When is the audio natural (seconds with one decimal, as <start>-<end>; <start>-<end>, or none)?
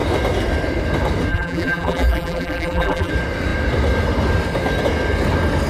0.0-1.3; 3.1-5.7